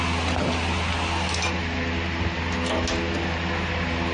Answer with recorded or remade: recorded